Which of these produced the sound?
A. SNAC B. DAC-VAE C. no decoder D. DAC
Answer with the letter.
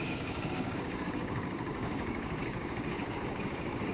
D